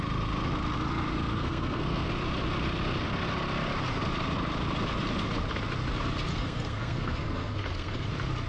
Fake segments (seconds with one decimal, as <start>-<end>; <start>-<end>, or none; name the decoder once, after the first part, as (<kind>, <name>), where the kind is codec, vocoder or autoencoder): 1.3-2.1 (codec, SNAC); 6.3-8.1